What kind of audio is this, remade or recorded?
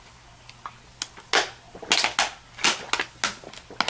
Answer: recorded